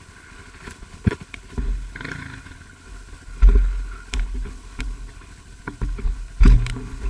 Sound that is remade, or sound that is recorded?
remade